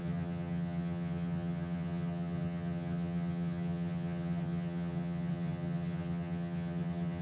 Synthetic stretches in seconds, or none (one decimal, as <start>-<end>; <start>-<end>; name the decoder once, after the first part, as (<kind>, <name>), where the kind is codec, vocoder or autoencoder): 0.0-7.2 (vocoder, HiFi-GAN)